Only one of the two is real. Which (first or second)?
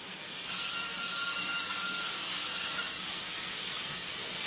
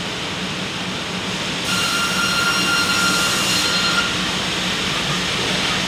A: second